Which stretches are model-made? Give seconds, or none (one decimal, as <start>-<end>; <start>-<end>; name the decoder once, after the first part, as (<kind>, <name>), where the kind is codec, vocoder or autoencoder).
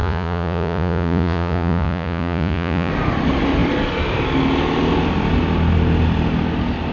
0.0-2.9 (vocoder, Vocos)